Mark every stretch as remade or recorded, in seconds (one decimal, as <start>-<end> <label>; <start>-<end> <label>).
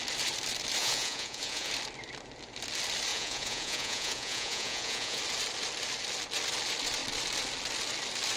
0.0-0.8 recorded; 0.8-1.7 remade; 1.7-3.1 recorded; 3.1-5.2 remade; 5.2-8.4 recorded